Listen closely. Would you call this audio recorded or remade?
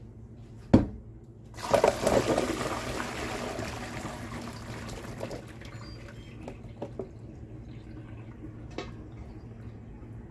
recorded